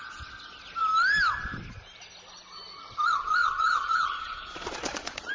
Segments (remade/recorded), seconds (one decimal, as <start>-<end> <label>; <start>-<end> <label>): 0.0-3.4 recorded; 3.4-5.3 remade